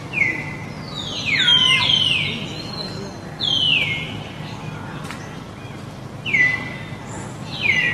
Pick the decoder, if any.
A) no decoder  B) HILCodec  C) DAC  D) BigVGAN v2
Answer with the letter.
A